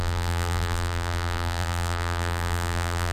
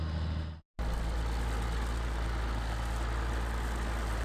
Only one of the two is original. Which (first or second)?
second